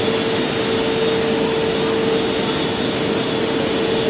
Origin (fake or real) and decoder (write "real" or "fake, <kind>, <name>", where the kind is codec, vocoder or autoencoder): real